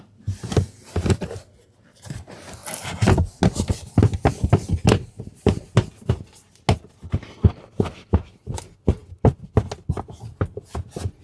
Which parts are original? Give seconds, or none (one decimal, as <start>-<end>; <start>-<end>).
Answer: 0.0-11.2